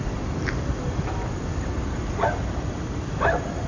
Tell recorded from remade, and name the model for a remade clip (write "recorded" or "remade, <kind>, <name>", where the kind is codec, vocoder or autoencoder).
recorded